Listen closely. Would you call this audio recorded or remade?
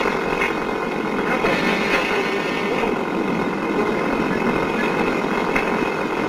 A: recorded